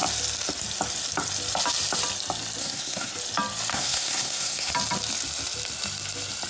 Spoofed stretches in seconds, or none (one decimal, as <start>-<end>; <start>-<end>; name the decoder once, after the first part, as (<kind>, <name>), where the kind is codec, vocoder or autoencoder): 2.6-3.1 (codec, SNAC); 3.7-4.7